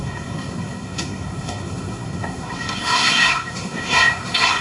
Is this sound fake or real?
fake